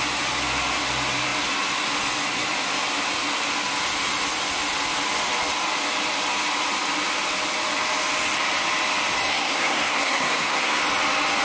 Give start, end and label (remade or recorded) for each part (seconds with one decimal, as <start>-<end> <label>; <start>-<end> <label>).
0.0-9.3 recorded; 9.3-10.8 remade; 10.8-11.4 recorded